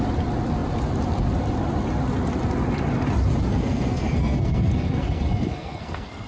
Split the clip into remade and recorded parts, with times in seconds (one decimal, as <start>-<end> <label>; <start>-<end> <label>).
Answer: 0.0-3.5 recorded; 3.5-6.3 remade